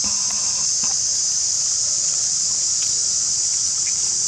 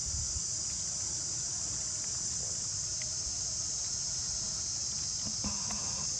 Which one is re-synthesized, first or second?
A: first